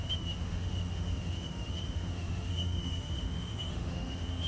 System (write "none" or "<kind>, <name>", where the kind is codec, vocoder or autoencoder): autoencoder, DAC-VAE